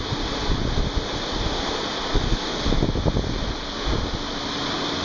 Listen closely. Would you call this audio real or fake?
real